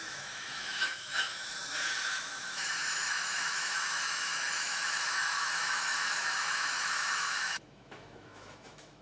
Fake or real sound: fake